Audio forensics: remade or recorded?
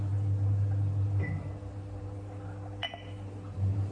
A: recorded